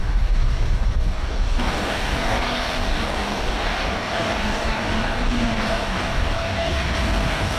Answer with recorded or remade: remade